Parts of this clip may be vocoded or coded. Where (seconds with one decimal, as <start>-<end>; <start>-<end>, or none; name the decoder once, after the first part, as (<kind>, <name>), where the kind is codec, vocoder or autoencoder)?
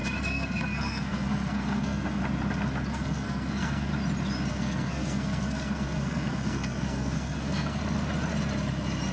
0.0-2.2 (codec, SNAC); 2.9-3.9; 4.5-7.8